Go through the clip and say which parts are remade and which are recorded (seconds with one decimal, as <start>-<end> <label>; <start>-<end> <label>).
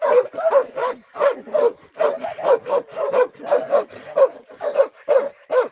0.0-0.8 remade; 0.8-4.2 recorded; 4.2-5.7 remade